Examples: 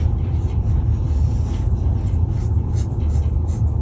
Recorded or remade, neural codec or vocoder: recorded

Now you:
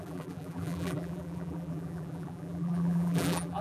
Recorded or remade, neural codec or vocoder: remade, vocoder, BigVGAN v2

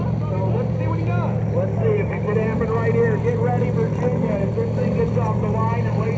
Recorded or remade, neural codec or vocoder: recorded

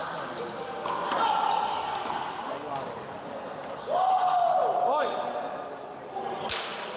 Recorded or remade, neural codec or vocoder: recorded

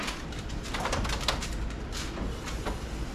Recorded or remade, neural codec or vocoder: recorded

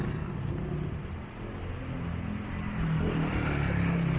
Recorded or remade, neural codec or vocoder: recorded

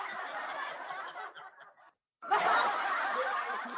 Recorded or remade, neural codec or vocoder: recorded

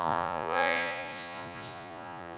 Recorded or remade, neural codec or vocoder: remade, vocoder, Vocos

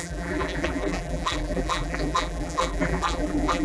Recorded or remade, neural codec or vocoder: remade, vocoder, BigVGAN v2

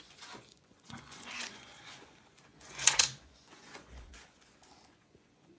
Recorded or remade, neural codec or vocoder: remade, vocoder, Vocos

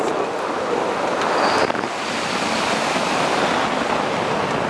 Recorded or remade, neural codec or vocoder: recorded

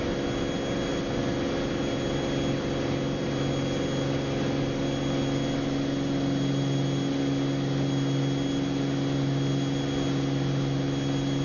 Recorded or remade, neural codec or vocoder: recorded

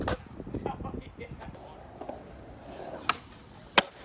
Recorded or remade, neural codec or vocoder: recorded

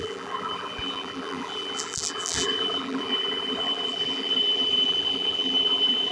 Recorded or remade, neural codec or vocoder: remade, vocoder, BigVGAN v2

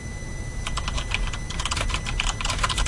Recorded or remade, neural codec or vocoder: remade, vocoder, BigVGAN v2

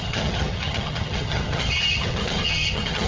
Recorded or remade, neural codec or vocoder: remade, vocoder, HiFi-GAN